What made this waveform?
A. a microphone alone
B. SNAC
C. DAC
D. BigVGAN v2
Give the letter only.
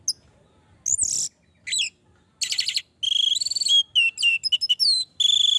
A